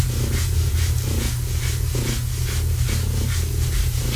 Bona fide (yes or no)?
yes